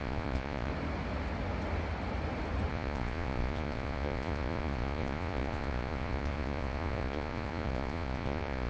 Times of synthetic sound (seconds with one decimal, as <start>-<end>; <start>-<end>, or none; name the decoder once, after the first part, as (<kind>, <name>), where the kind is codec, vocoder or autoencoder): 0.0-0.7 (vocoder, Vocos); 2.7-8.7